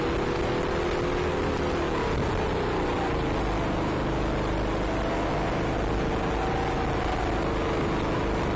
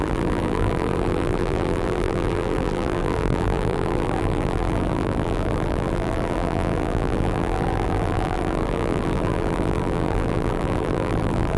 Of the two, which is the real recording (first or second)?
first